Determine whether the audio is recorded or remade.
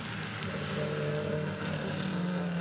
recorded